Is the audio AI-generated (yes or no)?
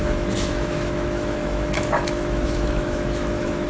yes